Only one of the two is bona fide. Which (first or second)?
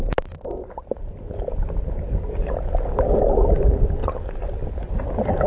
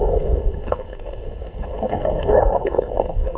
first